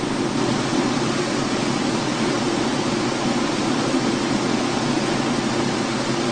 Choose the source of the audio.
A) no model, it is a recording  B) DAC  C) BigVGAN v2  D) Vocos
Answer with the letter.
D